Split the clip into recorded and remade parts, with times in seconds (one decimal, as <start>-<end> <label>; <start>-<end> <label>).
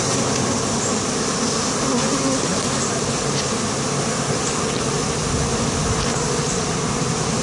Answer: 0.0-7.4 recorded